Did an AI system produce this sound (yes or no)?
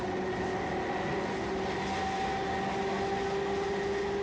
no